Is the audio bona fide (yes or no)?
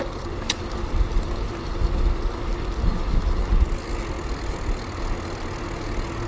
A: yes